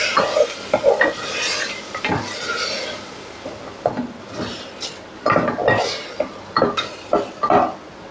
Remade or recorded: recorded